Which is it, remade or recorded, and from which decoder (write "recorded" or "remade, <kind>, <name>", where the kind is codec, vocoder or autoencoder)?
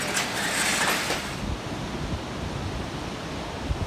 recorded